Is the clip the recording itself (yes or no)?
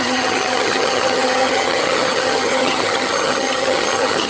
no